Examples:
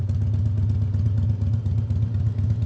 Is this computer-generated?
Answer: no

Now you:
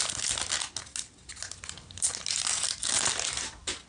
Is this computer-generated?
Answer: no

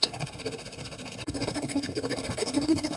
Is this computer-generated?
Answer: yes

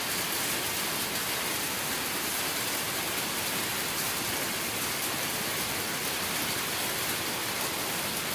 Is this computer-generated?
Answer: no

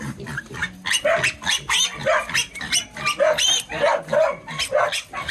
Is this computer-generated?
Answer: no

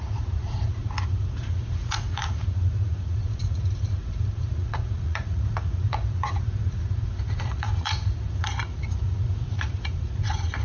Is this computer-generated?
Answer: yes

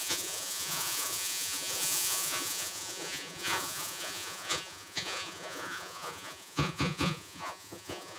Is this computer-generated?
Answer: yes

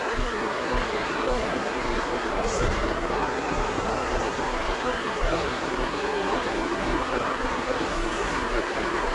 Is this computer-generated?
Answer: yes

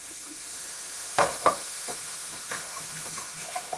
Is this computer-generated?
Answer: yes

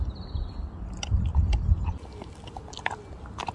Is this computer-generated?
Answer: no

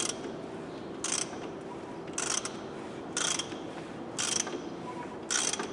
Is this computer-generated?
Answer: no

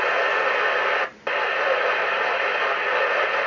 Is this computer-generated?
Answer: no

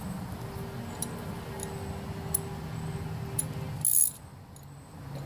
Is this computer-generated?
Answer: no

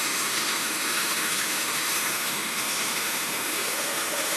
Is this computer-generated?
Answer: yes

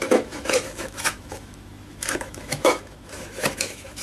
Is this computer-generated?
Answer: yes